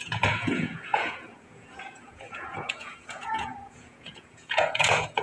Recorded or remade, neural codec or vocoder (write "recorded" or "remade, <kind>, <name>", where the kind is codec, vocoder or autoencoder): remade, vocoder, Vocos